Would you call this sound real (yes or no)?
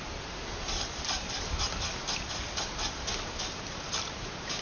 yes